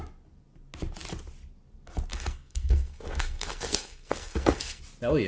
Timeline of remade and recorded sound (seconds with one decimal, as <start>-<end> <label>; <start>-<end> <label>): 0.0-2.1 recorded; 2.1-4.8 remade; 4.8-5.3 recorded